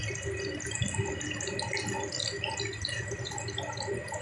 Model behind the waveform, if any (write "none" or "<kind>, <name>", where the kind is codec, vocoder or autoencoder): none